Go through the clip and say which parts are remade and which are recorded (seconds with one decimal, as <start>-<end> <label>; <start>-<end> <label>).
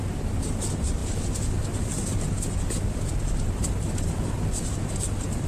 0.0-5.5 recorded